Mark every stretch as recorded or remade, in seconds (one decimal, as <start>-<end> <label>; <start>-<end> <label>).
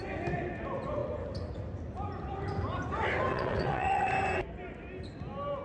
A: 0.0-3.3 recorded; 3.3-4.1 remade; 4.1-5.6 recorded